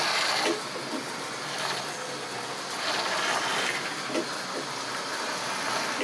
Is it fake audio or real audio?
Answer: real